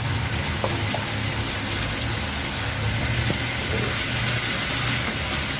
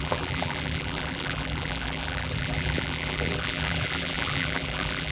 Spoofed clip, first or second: second